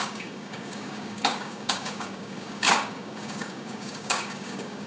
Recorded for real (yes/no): no